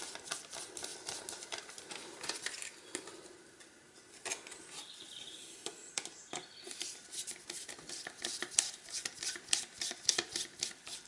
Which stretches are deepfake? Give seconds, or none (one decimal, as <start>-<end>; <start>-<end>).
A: 0.9-2.3; 5.8-10.7